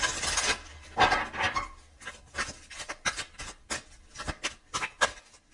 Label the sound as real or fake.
real